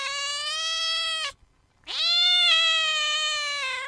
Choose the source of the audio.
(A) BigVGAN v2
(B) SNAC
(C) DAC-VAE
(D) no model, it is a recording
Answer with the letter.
D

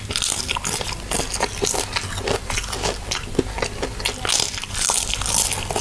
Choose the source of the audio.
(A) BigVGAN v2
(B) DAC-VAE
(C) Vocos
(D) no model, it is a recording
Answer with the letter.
D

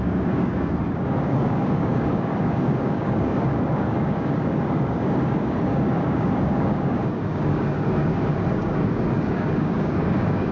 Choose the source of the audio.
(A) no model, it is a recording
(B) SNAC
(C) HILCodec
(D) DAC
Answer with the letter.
D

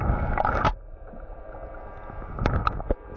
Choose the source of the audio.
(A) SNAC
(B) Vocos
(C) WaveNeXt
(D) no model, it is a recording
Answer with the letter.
D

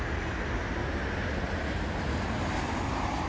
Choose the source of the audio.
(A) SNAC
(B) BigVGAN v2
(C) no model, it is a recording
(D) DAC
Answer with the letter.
C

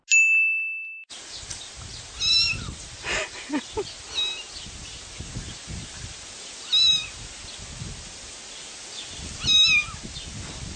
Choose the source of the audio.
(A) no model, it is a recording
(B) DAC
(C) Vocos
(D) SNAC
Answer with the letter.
A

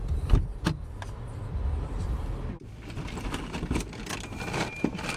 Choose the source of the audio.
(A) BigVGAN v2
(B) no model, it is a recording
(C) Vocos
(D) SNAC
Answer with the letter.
A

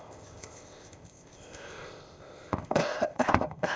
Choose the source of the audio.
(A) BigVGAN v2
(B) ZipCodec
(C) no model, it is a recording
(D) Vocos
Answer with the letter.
B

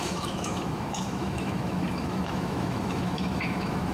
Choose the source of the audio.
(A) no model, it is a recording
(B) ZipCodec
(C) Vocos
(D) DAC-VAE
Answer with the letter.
D